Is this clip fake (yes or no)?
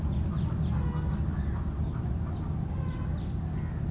no